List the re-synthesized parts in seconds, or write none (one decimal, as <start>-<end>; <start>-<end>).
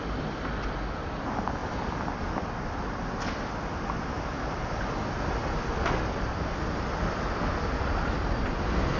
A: none